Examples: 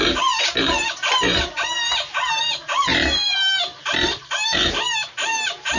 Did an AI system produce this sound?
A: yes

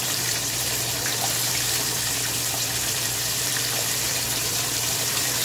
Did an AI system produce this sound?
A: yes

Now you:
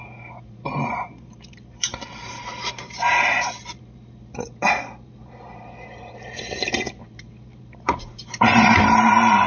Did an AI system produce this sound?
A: yes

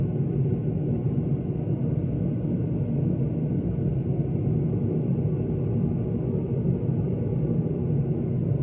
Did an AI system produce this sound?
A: no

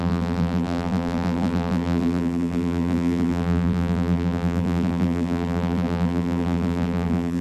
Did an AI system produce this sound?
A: yes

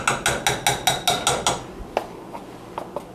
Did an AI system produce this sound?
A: no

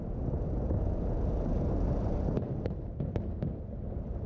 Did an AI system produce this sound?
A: no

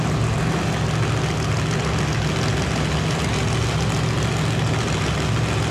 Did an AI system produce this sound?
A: no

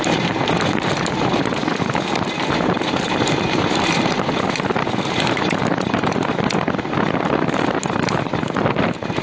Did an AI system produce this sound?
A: yes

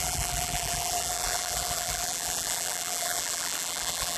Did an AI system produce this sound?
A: yes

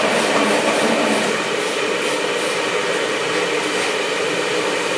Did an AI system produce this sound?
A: yes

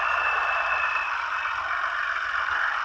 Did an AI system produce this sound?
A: yes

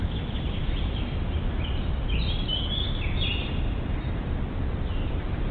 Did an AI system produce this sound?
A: no